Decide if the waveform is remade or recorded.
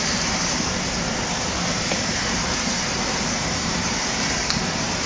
remade